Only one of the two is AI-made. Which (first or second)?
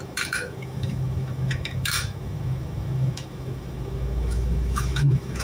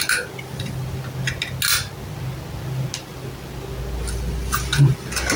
first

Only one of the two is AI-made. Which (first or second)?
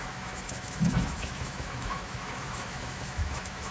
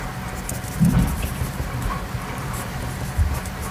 first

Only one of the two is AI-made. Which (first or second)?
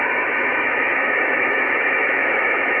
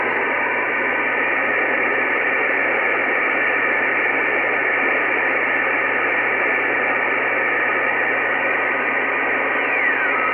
first